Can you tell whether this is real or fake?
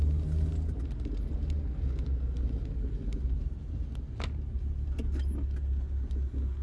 real